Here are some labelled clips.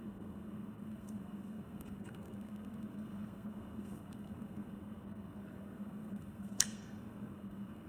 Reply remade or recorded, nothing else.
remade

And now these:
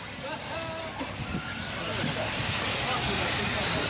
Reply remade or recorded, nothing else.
recorded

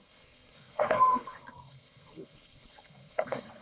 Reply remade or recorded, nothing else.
remade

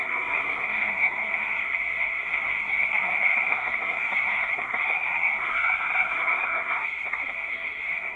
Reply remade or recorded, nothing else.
remade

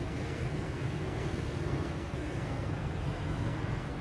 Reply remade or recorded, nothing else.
remade